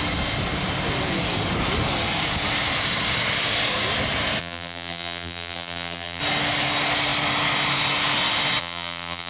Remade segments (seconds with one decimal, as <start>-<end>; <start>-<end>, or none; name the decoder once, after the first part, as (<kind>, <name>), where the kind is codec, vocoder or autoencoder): 4.4-6.2 (vocoder, BigVGAN v2); 8.6-9.3